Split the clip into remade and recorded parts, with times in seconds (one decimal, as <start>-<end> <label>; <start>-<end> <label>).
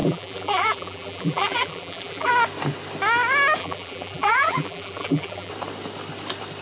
0.0-2.3 remade; 2.3-3.6 recorded; 3.6-5.5 remade; 5.5-6.6 recorded